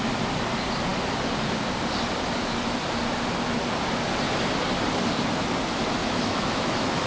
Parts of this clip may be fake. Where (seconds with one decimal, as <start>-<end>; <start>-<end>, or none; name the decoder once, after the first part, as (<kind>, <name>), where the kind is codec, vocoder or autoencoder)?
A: 6.0-7.1 (autoencoder, DAC-VAE)